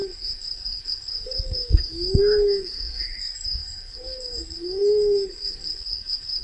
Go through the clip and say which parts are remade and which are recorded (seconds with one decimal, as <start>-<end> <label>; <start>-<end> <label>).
0.0-6.4 remade